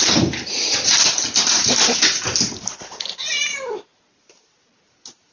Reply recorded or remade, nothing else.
recorded